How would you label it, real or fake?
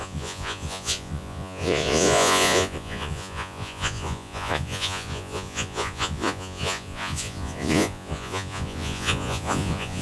fake